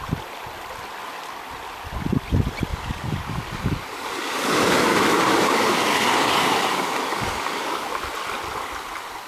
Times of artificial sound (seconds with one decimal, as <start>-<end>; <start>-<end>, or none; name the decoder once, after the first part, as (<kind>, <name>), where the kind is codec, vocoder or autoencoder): 2.7-4.5 (codec, DAC); 4.9-7.9